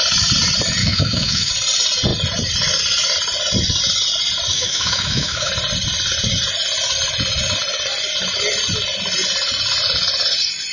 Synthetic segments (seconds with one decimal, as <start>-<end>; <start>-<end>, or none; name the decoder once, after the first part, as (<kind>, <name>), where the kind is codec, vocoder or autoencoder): 0.8-1.5 (autoencoder, DAC-VAE); 4.5-5.5